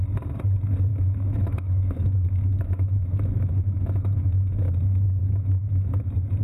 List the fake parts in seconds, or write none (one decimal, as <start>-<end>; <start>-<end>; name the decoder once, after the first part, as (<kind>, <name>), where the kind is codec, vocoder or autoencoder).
0.9-4.7 (autoencoder, DAC-VAE); 5.2-6.0